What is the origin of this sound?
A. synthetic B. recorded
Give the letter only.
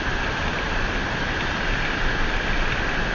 B